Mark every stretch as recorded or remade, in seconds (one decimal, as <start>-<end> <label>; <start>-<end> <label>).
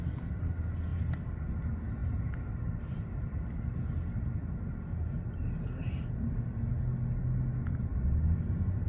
0.0-2.0 recorded; 2.0-6.7 remade; 6.7-8.9 recorded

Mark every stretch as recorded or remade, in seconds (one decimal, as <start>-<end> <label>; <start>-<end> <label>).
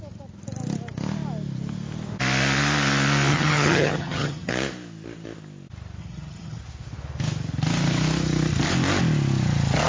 0.0-3.3 recorded; 3.3-4.5 remade; 4.5-6.0 recorded; 6.0-6.6 remade; 6.6-9.9 recorded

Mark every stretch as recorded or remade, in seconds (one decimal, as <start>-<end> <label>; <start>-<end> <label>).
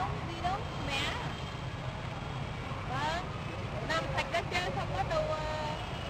0.0-3.6 recorded; 3.6-5.4 remade; 5.4-6.1 recorded